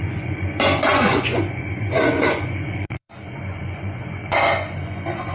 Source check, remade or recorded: remade